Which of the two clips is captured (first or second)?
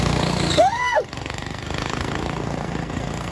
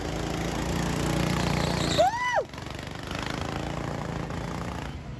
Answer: second